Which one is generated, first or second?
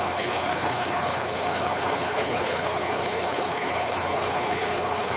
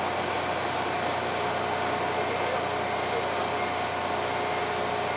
first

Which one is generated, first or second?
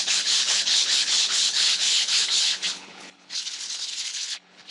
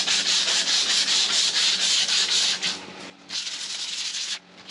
first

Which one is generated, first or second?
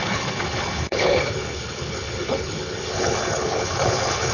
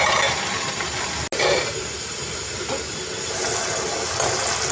first